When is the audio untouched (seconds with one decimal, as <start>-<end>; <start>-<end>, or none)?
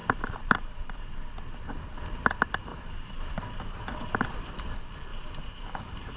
1.1-2.7; 4.6-5.1